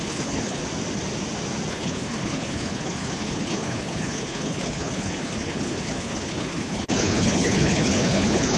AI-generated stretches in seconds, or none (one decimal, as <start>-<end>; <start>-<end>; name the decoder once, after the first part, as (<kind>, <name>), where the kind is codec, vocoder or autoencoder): 0.0-0.6 (codec, HILCodec); 1.7-8.6